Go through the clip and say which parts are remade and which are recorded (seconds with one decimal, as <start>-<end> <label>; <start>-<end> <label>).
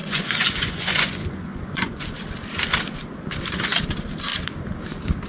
0.0-2.2 remade; 2.2-5.3 recorded